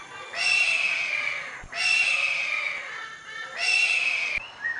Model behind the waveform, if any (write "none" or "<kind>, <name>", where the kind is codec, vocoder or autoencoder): none